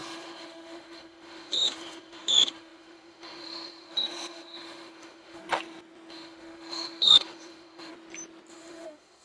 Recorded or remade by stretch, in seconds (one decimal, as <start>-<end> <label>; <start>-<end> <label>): 0.0-5.4 remade; 5.4-6.1 recorded; 6.1-7.9 remade; 7.9-8.5 recorded; 8.5-9.2 remade